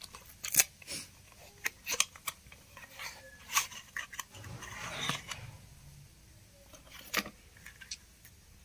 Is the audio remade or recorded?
recorded